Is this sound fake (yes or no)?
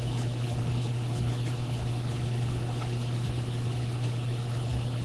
yes